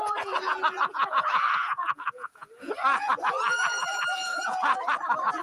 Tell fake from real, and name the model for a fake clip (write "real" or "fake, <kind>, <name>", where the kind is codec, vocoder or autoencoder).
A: fake, vocoder, Vocos